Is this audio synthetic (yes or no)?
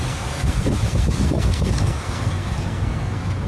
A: yes